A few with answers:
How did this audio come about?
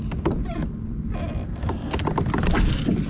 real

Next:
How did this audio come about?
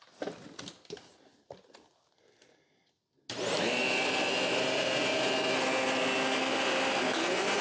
real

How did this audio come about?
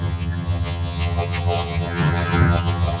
fake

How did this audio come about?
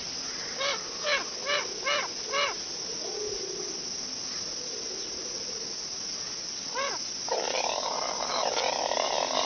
real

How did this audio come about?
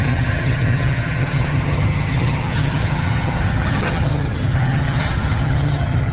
fake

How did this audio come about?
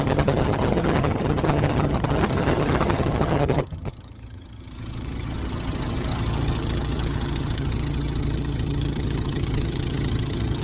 fake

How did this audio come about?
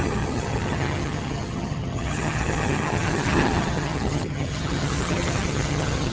fake